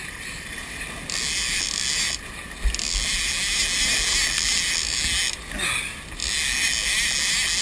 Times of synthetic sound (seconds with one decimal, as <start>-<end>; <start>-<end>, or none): none